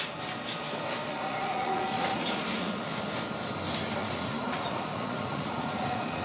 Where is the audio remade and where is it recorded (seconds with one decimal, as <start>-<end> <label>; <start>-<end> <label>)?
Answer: 0.0-1.0 recorded; 1.0-2.9 remade; 2.9-4.0 recorded; 4.0-6.2 remade